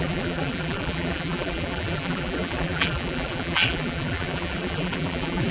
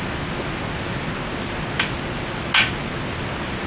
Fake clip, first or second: first